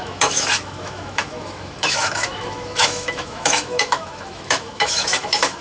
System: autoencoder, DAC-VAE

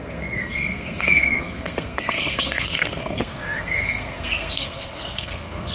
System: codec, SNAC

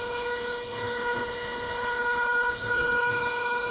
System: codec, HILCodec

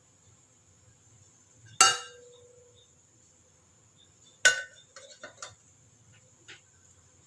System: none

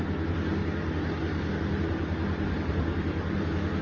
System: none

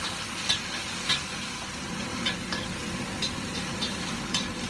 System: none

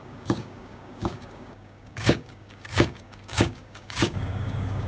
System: codec, DAC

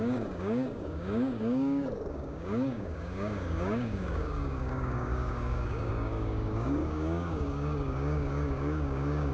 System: codec, DAC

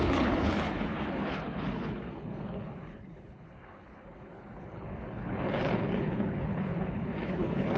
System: codec, HILCodec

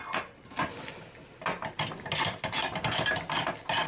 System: none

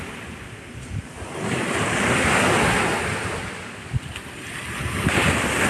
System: none